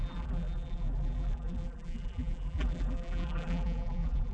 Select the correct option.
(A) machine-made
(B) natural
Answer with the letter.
A